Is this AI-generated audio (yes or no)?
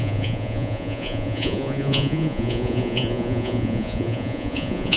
yes